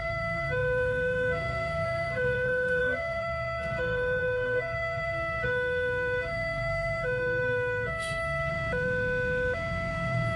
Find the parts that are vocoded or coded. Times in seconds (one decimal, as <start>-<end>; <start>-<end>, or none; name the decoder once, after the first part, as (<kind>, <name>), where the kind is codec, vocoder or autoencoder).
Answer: 0.0-8.5 (codec, SNAC)